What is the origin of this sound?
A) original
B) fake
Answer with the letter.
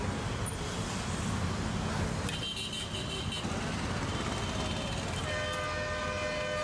A